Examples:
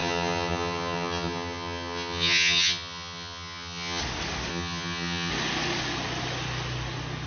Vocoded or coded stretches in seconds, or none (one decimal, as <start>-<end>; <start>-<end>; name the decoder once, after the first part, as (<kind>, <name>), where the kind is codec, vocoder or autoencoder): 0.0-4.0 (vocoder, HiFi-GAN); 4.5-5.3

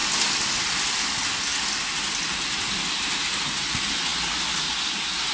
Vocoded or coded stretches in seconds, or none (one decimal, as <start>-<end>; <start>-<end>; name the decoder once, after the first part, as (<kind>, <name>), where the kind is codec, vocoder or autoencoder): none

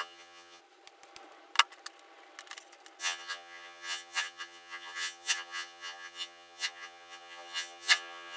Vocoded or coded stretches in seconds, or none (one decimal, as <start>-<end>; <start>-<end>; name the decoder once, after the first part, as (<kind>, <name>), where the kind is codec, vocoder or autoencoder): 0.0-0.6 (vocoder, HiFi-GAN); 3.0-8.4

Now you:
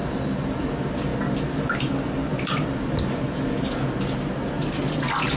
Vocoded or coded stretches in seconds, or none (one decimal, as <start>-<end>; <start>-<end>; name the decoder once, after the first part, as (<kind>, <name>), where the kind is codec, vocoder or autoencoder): none